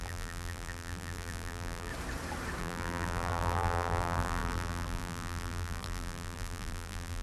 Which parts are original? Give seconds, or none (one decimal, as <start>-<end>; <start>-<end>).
1.9-2.6